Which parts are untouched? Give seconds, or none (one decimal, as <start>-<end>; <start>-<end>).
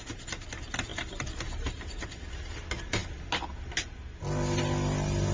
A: 0.0-0.9; 1.7-5.3